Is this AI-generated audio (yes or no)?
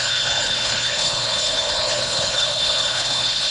yes